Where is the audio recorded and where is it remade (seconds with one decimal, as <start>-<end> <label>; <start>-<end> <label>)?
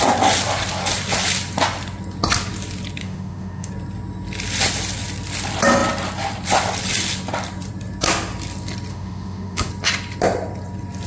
0.0-3.0 recorded; 3.0-3.7 remade; 3.7-8.9 recorded; 8.9-9.7 remade; 9.7-11.1 recorded